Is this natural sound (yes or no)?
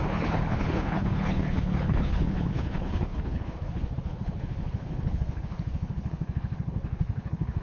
no